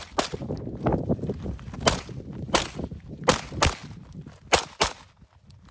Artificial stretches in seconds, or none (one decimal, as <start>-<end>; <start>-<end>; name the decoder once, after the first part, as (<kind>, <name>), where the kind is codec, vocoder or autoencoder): 0.9-3.1 (vocoder, BigVGAN v2); 3.8-5.1